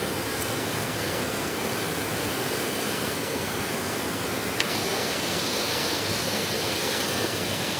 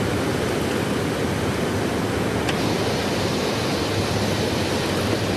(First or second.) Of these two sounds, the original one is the second